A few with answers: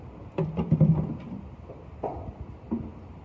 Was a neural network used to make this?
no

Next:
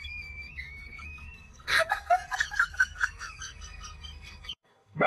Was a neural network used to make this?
yes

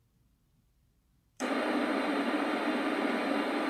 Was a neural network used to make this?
yes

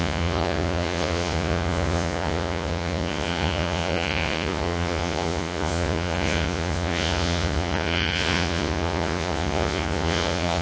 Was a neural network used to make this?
yes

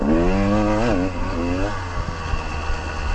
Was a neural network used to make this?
no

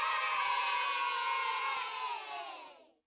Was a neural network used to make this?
yes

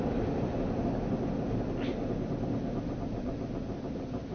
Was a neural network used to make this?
no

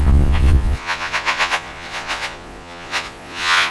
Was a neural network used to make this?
yes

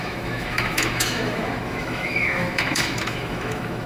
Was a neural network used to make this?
yes